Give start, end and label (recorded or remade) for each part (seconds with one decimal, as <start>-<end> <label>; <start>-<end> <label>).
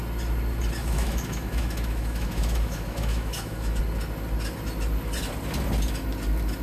0.0-0.8 recorded; 0.8-3.8 remade; 3.8-6.6 recorded